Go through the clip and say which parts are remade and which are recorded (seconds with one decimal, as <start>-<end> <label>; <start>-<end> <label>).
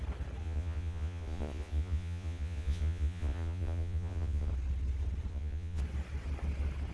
0.0-0.4 recorded; 0.4-4.5 remade; 4.5-5.3 recorded; 5.3-5.8 remade; 5.8-6.9 recorded